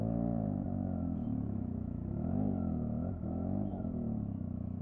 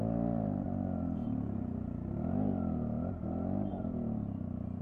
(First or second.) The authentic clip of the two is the second